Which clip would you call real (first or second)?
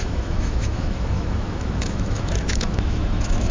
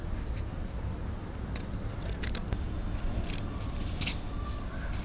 second